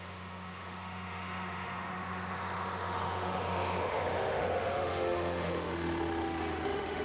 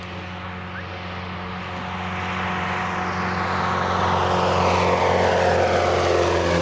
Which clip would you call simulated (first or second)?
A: first